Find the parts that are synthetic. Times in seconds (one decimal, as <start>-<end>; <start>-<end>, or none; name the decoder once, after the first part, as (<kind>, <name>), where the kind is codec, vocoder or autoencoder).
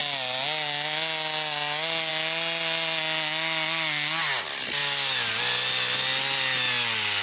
none